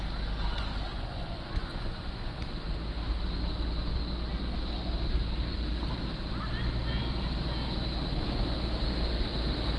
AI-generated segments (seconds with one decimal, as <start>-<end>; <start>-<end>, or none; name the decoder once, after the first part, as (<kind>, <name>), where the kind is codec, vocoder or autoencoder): 0.9-2.3 (vocoder, Vocos)